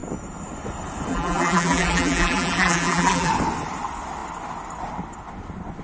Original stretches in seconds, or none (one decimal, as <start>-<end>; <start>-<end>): 0.0-1.1; 3.3-5.8